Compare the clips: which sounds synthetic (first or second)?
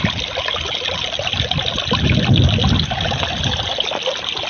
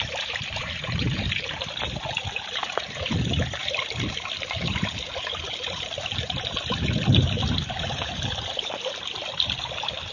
second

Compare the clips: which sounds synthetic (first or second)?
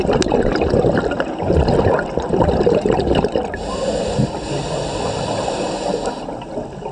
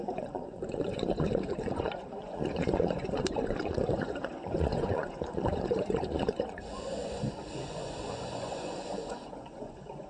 second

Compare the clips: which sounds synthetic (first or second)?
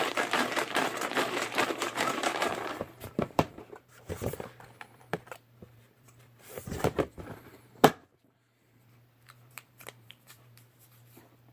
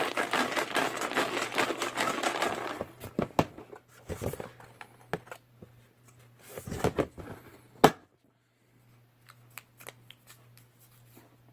first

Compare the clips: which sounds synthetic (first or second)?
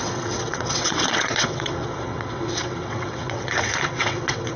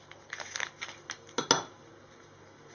first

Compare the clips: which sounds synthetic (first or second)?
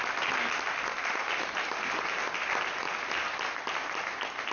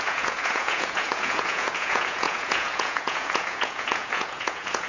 second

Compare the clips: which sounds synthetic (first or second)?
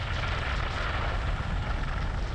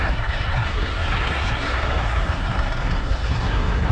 second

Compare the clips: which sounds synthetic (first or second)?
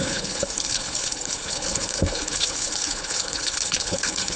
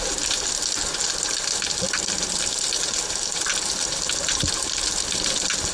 first